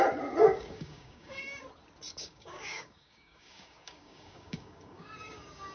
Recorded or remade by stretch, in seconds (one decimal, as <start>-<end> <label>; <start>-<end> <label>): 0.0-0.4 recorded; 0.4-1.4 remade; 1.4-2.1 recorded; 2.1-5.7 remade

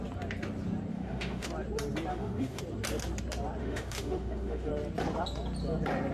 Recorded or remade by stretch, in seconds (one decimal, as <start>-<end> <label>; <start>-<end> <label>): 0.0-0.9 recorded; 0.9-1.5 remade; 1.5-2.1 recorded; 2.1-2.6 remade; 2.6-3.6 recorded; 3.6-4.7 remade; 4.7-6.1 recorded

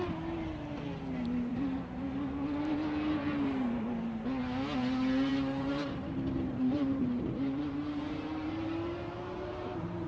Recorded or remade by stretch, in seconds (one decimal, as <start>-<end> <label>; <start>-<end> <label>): 0.0-1.5 recorded; 1.5-2.0 remade; 2.0-5.3 recorded; 5.3-10.1 remade

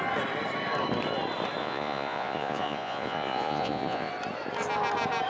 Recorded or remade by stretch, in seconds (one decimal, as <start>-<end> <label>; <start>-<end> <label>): 0.0-1.6 recorded; 1.6-4.1 remade; 4.1-5.3 recorded

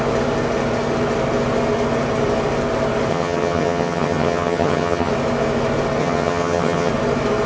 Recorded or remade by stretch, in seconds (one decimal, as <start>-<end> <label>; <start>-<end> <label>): 0.0-3.1 recorded; 3.1-5.1 remade; 5.1-6.0 recorded; 6.0-6.9 remade; 6.9-7.5 recorded

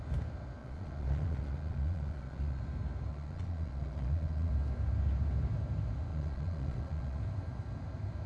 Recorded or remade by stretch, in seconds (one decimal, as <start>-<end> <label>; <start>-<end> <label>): 0.0-0.6 recorded; 0.6-2.6 remade; 2.6-3.1 recorded; 3.1-4.5 remade; 4.5-6.1 recorded; 6.1-7.2 remade; 7.2-8.3 recorded